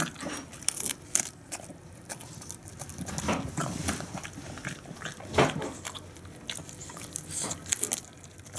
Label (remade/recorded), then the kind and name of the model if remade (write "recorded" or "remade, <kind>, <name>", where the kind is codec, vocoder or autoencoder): recorded